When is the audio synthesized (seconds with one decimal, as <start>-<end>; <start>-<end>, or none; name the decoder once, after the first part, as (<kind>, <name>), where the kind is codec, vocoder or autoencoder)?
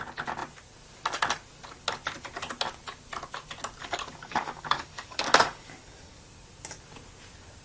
3.8-6.2 (codec, DAC)